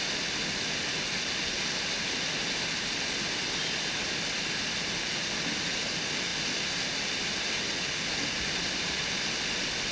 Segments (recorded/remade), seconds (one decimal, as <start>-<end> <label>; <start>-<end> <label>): 0.0-9.9 recorded